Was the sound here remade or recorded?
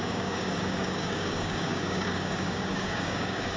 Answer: remade